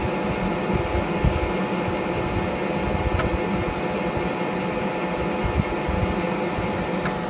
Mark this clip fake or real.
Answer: real